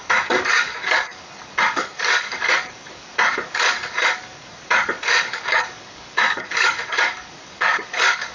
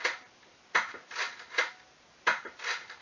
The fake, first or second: first